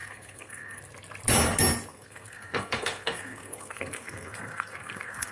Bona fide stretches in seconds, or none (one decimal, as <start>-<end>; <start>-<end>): 0.8-1.9